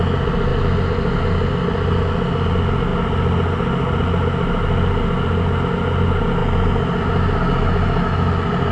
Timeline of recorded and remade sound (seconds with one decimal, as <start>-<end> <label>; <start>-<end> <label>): 0.0-8.7 recorded